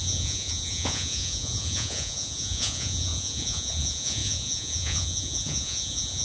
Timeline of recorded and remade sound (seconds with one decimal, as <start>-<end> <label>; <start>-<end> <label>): 0.0-6.2 remade

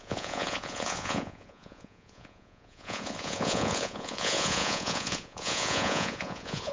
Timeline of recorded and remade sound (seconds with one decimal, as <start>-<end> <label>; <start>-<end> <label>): 0.0-6.7 remade

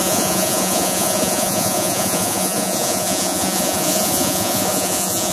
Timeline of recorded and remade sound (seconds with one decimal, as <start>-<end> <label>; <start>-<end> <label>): 0.0-5.3 remade

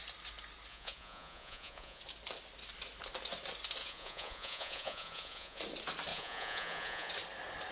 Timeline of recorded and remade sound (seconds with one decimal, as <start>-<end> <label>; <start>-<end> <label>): 0.0-0.7 recorded; 0.7-2.0 remade; 2.0-3.8 recorded; 3.8-5.6 remade; 5.6-6.1 recorded; 6.1-7.1 remade; 7.1-7.7 recorded

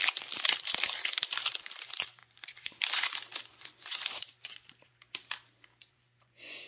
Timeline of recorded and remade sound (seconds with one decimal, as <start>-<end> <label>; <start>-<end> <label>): 0.0-2.2 recorded; 2.2-3.1 remade; 3.1-3.5 recorded; 3.5-4.9 remade; 4.9-5.7 recorded; 5.7-6.7 remade

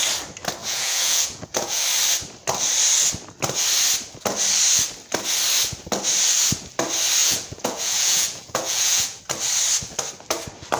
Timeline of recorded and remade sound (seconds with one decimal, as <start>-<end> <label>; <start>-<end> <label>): 0.0-0.6 recorded; 0.6-1.8 remade; 1.8-7.2 recorded; 7.2-9.2 remade; 9.2-10.8 recorded

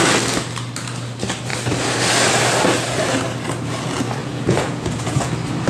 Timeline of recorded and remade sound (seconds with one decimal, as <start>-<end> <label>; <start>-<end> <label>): 0.0-4.2 recorded; 4.2-5.3 remade; 5.3-5.7 recorded